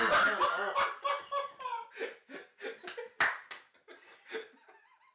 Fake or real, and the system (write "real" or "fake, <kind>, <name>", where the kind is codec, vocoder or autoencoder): real